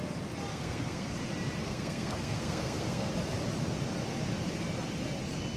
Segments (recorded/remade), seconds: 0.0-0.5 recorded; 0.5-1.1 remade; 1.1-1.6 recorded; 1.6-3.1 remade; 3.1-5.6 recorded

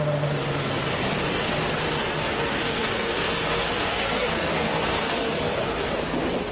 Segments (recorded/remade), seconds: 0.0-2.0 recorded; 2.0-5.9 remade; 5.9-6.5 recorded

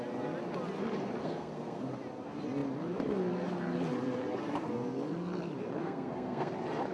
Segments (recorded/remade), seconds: 0.0-1.2 recorded; 1.2-1.8 remade; 1.8-5.8 recorded; 5.8-6.5 remade; 6.5-6.9 recorded